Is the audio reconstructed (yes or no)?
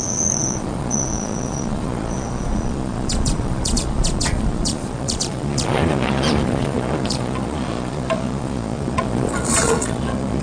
yes